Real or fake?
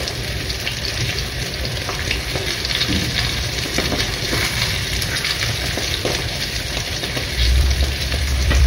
fake